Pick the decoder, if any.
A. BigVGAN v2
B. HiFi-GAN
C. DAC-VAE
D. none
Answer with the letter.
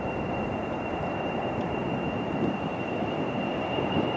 A